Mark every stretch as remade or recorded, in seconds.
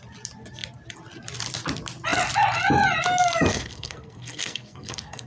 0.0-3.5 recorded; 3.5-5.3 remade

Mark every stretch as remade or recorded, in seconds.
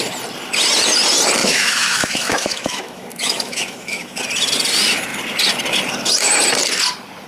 0.0-1.4 recorded; 1.4-4.2 remade; 4.2-7.3 recorded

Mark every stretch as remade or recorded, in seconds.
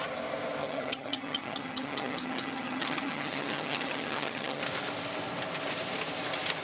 0.0-0.6 recorded; 0.6-4.6 remade; 4.6-6.6 recorded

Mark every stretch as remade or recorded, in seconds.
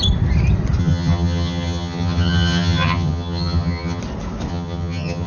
0.0-0.8 recorded; 0.8-4.0 remade; 4.0-4.5 recorded; 4.5-5.3 remade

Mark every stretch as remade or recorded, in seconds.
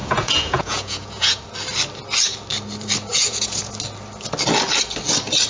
0.0-1.4 remade; 1.4-3.1 recorded; 3.1-3.7 remade; 3.7-5.5 recorded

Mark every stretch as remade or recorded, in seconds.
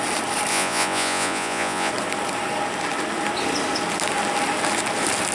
0.0-0.5 recorded; 0.5-1.9 remade; 1.9-5.3 recorded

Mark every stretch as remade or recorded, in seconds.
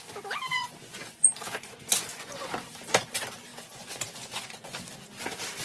0.0-0.5 recorded; 0.5-2.5 remade; 2.5-3.5 recorded; 3.5-4.8 remade; 4.8-5.6 recorded